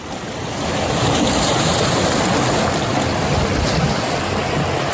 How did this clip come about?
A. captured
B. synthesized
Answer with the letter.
A